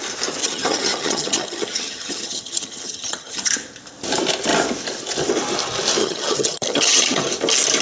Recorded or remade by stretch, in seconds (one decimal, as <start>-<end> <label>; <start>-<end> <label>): 0.0-0.4 recorded; 0.4-3.5 remade; 3.5-6.0 recorded; 6.0-7.3 remade; 7.3-7.8 recorded

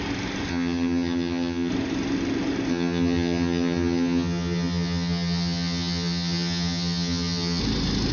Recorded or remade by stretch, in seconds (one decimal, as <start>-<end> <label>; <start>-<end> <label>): 0.0-0.5 recorded; 0.5-1.7 remade; 1.7-2.7 recorded; 2.7-7.6 remade; 7.6-8.1 recorded

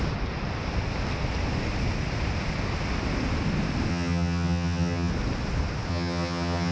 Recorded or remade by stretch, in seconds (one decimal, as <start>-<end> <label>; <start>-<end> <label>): 0.0-3.9 recorded; 3.9-5.1 remade; 5.1-5.9 recorded; 5.9-6.7 remade

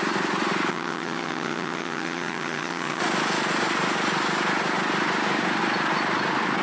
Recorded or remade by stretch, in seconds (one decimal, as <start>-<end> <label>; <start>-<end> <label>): 0.0-0.7 recorded; 0.7-3.0 remade; 3.0-6.6 recorded

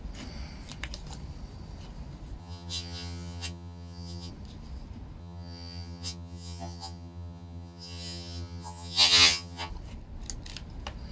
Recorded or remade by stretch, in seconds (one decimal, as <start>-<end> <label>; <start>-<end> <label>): 0.0-2.4 recorded; 2.4-4.3 remade; 4.3-5.2 recorded; 5.2-9.7 remade; 9.7-11.1 recorded